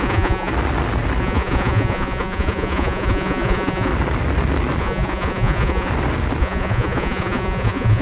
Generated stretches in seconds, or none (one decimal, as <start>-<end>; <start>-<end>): 0.0-0.5; 1.2-3.9; 4.8-5.9; 6.4-8.0